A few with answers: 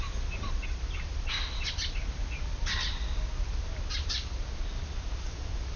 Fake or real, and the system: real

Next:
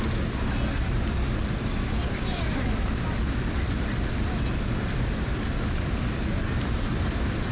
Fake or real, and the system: fake, vocoder, BigVGAN v2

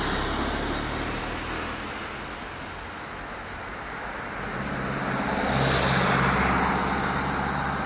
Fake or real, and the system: real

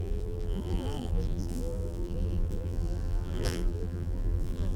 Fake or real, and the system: fake, vocoder, BigVGAN v2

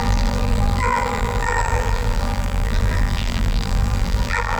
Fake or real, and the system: fake, vocoder, BigVGAN v2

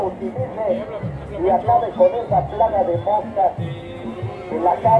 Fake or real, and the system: real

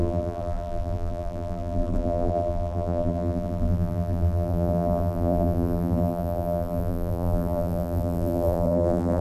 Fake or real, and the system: fake, vocoder, BigVGAN v2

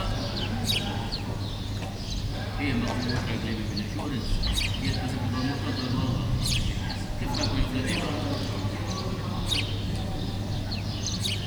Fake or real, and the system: real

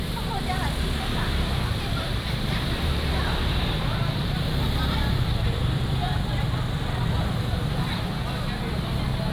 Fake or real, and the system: fake, vocoder, BigVGAN v2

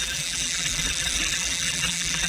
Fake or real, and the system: fake, vocoder, BigVGAN v2